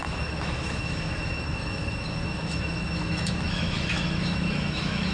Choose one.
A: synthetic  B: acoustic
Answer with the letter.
A